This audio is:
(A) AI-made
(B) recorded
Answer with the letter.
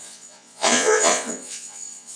A